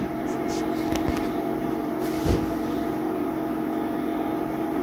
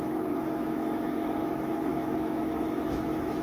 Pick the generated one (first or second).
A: second